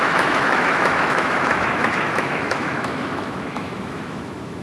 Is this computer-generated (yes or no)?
yes